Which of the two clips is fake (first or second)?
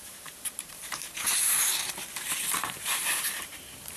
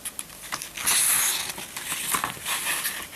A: first